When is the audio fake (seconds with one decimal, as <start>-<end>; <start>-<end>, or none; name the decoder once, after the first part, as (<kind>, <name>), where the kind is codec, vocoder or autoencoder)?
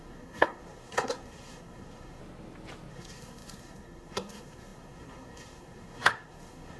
0.0-2.2 (codec, SNAC); 2.9-6.8